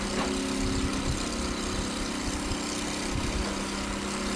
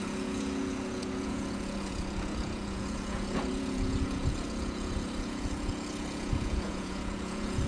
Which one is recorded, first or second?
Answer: first